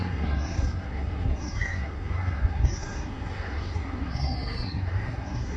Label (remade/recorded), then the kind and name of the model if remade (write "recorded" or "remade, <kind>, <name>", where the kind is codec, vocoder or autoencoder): remade, codec, SNAC